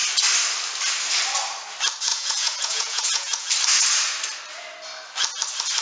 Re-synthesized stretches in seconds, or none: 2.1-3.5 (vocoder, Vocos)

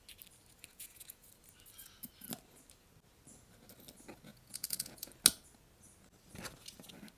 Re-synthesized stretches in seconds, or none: 0.7-1.3 (vocoder, Vocos); 4.3-5.1

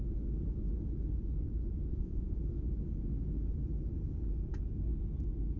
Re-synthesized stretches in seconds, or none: 1.9-2.4 (vocoder, Vocos)

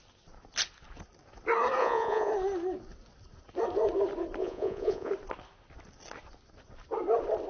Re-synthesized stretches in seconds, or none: 1.8-2.3 (vocoder, Vocos); 4.4-5.1

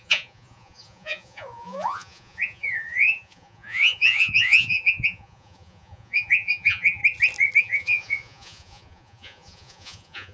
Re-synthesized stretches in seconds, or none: 0.0-7.0 (vocoder, Vocos); 7.6-10.3

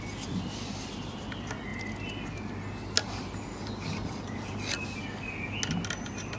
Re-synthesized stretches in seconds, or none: none